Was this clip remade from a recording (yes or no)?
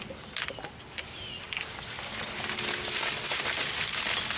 no